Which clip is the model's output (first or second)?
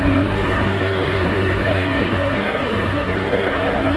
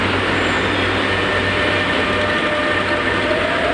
first